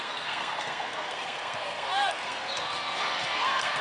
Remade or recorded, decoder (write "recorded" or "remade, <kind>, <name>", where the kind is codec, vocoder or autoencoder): remade, codec, SNAC